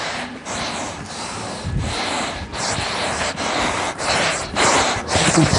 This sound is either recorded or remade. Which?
remade